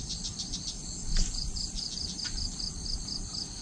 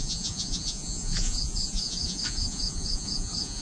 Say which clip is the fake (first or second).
second